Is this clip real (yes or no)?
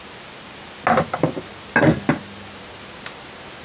yes